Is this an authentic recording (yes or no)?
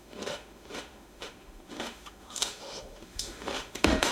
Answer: no